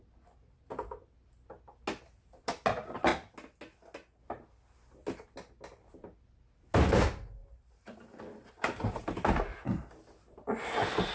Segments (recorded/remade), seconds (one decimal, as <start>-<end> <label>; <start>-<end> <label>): 0.0-7.4 recorded; 7.4-9.0 remade; 9.0-11.1 recorded